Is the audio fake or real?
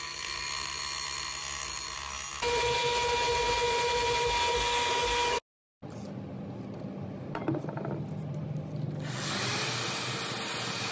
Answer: real